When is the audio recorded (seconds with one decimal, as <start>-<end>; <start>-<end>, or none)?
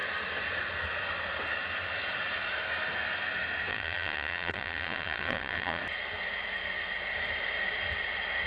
0.0-3.7; 5.8-8.5